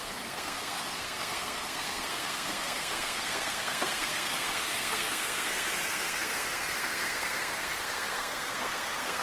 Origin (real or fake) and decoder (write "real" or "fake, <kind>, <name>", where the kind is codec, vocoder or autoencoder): fake, codec, SNAC